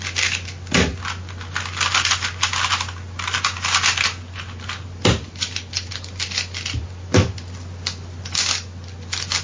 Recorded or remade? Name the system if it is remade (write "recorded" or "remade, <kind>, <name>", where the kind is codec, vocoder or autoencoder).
recorded